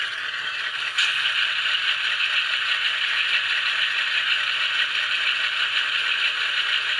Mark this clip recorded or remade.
recorded